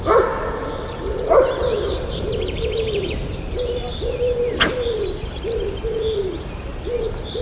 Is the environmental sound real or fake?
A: fake